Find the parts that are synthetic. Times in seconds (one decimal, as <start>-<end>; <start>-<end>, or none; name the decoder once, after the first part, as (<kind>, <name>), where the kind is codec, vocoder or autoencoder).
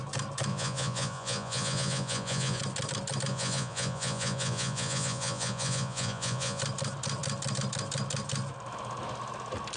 0.5-2.6 (vocoder, Vocos); 3.3-6.6